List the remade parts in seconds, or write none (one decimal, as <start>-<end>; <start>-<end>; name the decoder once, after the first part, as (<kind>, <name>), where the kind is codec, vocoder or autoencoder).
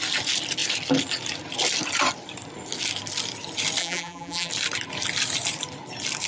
3.8-4.5 (vocoder, BigVGAN v2)